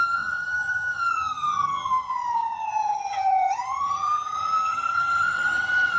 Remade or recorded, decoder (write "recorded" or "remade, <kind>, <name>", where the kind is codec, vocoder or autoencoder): remade, vocoder, HiFi-GAN